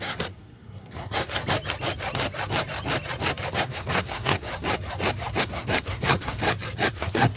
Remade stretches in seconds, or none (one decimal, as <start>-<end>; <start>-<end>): 0.0-1.4; 3.5-4.5; 5.4-6.4; 6.9-7.4

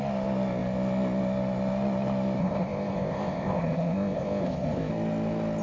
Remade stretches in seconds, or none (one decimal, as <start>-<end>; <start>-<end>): 2.4-4.9

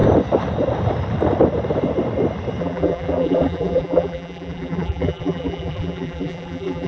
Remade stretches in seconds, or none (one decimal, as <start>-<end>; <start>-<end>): 2.6-6.9

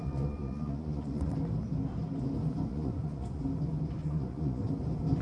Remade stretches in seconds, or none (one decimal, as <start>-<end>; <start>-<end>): 0.0-1.3; 2.7-3.4; 4.0-4.7

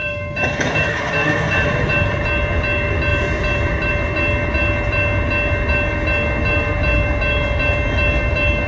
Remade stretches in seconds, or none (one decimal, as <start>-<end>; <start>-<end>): 0.0-2.2; 3.1-3.9